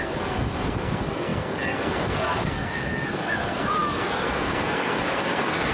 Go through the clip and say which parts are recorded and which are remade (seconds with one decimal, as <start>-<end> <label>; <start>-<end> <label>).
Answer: 0.0-5.7 remade